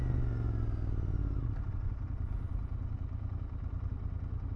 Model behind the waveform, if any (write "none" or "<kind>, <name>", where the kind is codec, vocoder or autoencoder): none